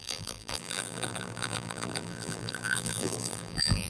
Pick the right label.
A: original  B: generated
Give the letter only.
B